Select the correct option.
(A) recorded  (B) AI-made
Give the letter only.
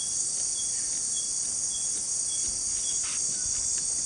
A